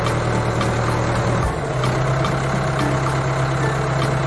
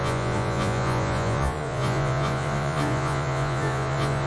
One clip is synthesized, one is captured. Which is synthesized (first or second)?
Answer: second